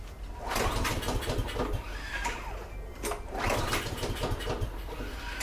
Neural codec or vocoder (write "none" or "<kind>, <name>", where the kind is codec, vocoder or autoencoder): none